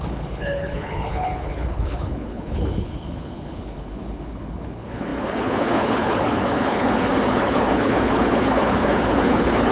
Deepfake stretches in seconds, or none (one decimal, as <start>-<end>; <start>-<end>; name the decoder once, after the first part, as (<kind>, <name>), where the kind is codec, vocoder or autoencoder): 0.0-9.7 (codec, HILCodec)